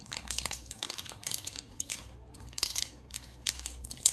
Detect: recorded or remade remade